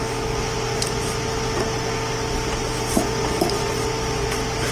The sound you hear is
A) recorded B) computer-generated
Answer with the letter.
A